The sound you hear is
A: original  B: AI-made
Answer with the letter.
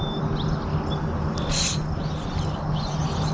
A